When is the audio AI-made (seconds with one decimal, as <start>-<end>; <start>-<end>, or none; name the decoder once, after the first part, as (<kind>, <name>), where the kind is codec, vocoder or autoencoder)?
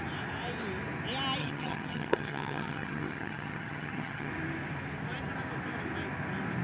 1.4-4.3 (vocoder, HiFi-GAN)